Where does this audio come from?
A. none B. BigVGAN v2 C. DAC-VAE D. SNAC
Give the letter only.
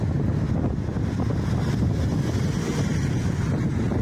A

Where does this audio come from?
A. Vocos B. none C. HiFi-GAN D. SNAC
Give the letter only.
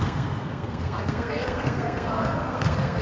D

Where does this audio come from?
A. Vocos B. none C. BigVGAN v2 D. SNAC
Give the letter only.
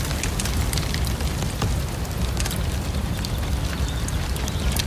B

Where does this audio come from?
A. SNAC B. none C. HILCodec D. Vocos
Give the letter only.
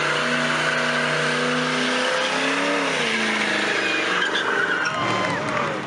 B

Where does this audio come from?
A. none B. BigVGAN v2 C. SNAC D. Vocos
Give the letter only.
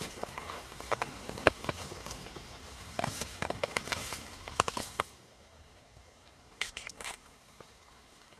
C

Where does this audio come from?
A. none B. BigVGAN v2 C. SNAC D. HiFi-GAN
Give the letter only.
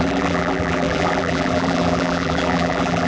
B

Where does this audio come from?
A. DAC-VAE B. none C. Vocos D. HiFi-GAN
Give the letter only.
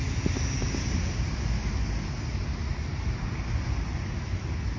B